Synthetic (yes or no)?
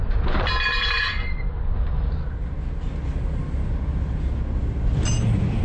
no